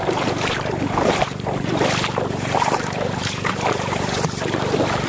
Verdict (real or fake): fake